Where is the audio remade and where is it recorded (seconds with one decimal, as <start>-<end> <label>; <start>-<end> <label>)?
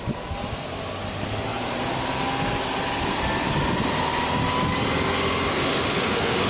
0.0-5.5 recorded; 5.5-6.5 remade